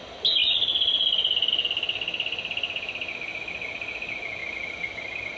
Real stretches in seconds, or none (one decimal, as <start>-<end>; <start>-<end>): 0.0-5.4